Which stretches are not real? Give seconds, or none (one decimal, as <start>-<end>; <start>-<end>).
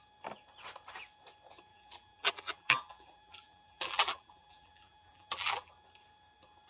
1.7-5.7